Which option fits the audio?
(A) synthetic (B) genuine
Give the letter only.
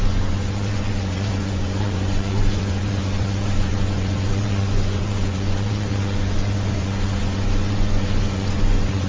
A